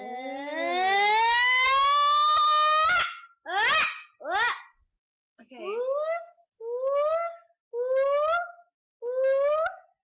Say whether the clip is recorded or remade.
recorded